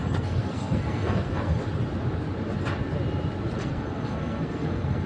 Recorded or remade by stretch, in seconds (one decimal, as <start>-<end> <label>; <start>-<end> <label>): 0.0-1.6 remade; 1.6-3.6 recorded; 3.6-5.1 remade